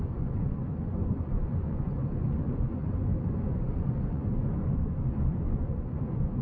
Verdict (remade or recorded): remade